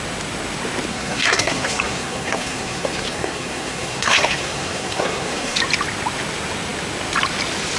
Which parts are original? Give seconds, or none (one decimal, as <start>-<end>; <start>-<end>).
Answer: 0.0-0.9; 5.6-7.8